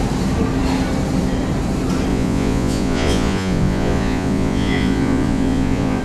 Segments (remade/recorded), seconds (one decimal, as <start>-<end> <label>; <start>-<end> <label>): 0.0-2.1 recorded; 2.1-6.0 remade